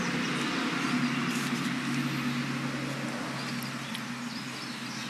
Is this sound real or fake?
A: real